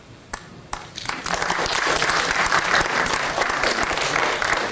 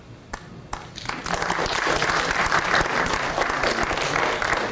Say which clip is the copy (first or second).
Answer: first